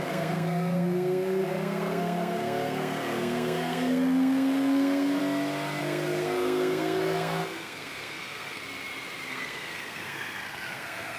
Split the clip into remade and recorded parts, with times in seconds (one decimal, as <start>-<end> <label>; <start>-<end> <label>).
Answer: 0.0-5.2 remade; 5.2-5.8 recorded; 5.8-8.6 remade; 8.6-9.3 recorded; 9.3-11.2 remade